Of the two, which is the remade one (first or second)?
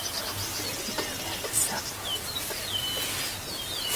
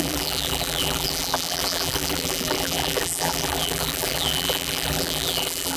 second